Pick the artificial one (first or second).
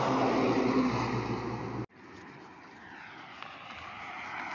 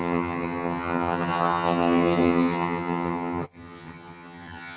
second